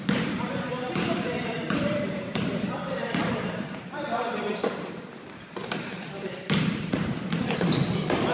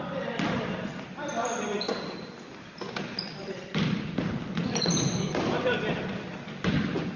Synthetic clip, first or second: first